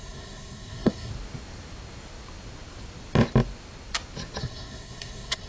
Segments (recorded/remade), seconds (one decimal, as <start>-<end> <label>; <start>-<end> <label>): 0.0-1.1 remade; 1.1-4.4 recorded; 4.4-5.5 remade